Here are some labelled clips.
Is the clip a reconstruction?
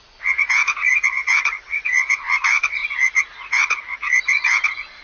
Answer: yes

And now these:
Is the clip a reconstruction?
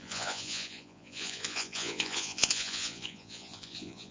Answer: yes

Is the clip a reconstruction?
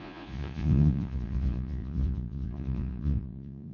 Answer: yes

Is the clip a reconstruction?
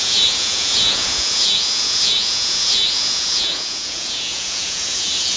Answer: yes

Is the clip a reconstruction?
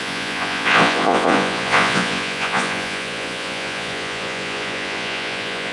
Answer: yes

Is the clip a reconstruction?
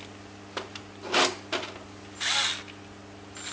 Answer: no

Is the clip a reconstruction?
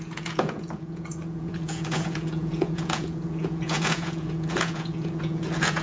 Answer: yes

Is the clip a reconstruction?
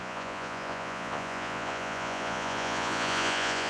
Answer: yes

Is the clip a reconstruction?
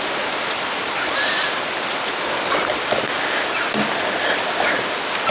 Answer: no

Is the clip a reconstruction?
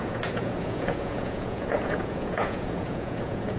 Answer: yes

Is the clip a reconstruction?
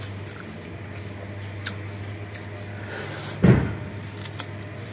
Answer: no